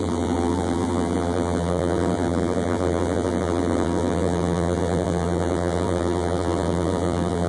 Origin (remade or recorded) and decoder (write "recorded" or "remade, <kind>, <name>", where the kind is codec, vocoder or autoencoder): remade, vocoder, BigVGAN v2